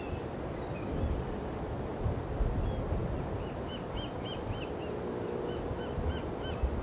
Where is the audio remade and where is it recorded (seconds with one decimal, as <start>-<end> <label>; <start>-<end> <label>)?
0.0-6.8 recorded